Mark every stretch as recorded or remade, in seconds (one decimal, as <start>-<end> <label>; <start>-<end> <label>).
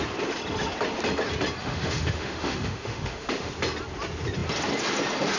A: 0.0-1.6 recorded; 1.6-3.5 remade; 3.5-5.4 recorded